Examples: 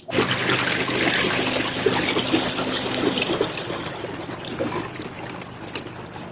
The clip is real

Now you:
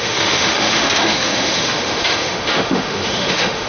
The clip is fake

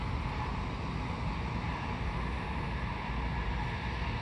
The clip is real